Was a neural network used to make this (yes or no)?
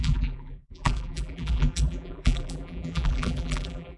yes